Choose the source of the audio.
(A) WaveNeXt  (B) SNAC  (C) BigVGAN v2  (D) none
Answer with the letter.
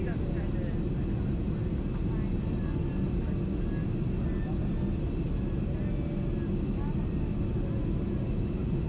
D